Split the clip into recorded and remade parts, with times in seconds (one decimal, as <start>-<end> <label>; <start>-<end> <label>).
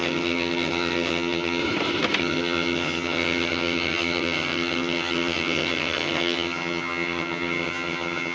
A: 0.0-1.6 remade; 1.6-2.2 recorded; 2.2-8.3 remade